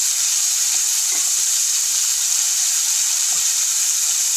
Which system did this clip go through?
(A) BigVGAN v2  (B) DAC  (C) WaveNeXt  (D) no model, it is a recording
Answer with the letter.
A